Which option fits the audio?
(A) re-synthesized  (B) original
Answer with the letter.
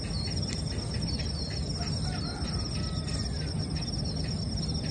B